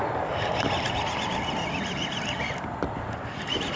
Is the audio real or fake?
real